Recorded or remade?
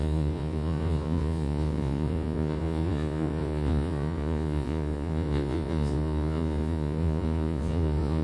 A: remade